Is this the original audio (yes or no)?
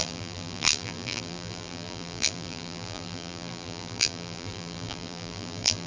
no